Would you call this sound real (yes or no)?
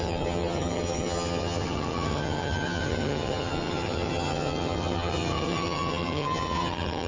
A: no